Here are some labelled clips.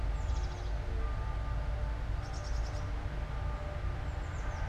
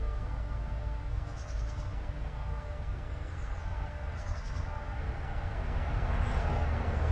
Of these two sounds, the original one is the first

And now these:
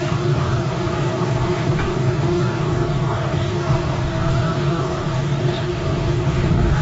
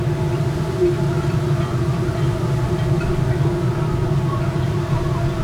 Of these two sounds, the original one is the second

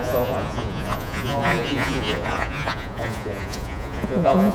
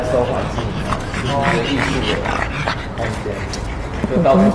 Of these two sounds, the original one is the second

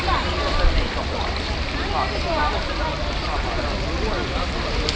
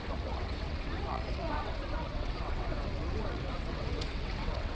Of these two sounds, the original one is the first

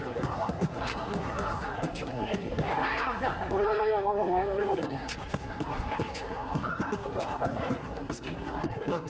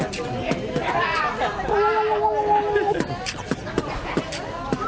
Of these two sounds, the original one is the second